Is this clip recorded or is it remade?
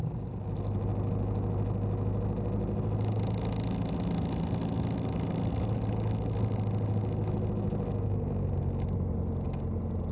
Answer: recorded